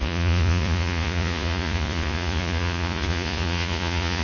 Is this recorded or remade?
remade